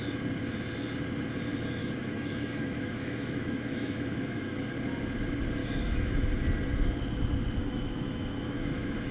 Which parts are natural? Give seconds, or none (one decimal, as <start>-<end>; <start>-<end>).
0.0-1.8; 4.7-5.6; 6.3-7.6